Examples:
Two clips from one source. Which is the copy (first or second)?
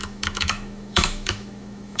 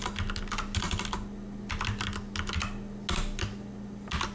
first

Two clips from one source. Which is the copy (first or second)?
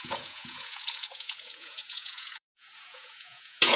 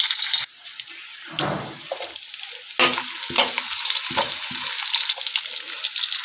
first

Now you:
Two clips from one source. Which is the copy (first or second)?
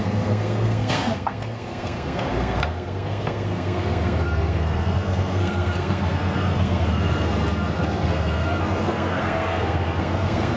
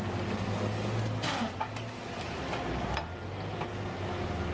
first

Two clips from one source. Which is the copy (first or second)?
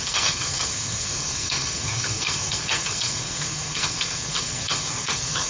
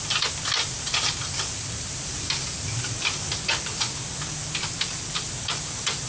first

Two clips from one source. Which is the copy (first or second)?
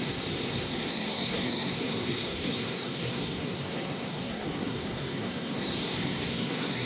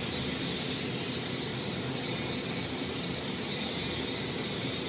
first